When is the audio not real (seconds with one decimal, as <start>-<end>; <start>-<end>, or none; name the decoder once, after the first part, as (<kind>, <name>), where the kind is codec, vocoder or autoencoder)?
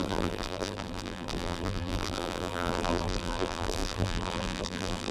0.0-5.1 (vocoder, BigVGAN v2)